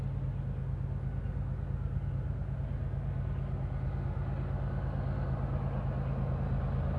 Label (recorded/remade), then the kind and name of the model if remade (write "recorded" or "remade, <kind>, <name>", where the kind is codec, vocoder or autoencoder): recorded